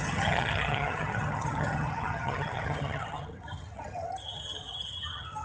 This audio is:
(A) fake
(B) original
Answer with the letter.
A